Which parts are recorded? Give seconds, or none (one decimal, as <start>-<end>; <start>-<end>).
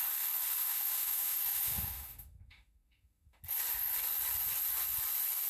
0.0-0.6; 3.4-5.5